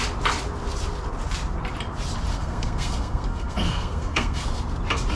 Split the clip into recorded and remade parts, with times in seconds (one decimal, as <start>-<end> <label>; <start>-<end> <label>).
0.0-2.3 recorded; 2.3-4.6 remade; 4.6-5.2 recorded